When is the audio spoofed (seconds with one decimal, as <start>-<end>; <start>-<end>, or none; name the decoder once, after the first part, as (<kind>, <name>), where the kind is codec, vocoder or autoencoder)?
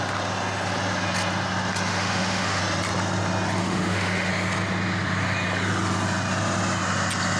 1.9-2.6 (autoencoder, DAC-VAE); 3.6-4.3